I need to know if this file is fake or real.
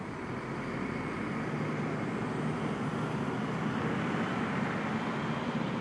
real